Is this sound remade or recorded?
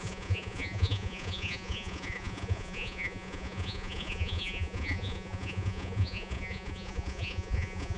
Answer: remade